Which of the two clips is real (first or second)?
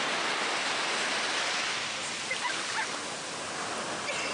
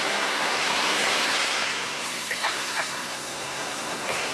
first